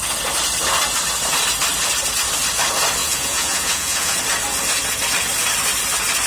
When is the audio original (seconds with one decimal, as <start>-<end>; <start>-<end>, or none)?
0.0-3.0; 4.2-6.3